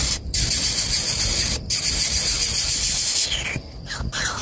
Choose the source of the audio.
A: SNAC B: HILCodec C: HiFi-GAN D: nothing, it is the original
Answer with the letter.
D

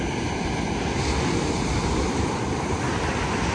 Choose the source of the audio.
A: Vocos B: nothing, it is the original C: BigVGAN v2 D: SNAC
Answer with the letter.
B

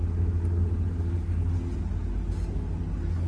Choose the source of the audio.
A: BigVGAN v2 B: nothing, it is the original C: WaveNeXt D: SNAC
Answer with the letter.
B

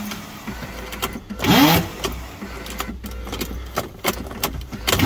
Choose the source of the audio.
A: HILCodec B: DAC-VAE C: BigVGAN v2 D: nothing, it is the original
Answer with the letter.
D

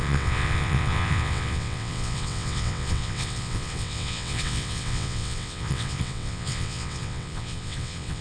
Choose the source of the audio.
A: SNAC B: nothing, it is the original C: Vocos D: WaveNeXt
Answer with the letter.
D